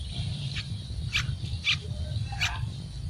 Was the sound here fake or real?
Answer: fake